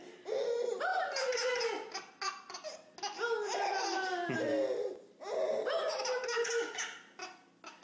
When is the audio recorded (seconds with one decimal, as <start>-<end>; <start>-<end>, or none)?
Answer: 0.0-7.8